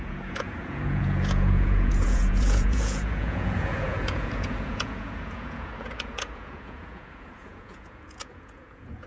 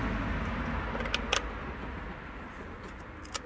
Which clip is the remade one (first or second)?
first